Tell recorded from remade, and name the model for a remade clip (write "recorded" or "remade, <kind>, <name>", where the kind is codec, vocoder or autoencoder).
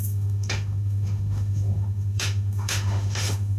remade, autoencoder, DAC-VAE